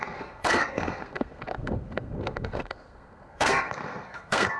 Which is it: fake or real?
fake